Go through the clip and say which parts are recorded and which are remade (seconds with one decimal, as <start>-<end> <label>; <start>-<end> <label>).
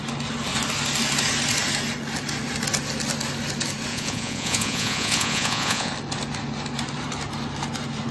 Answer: 0.0-3.9 recorded; 3.9-5.9 remade; 5.9-8.1 recorded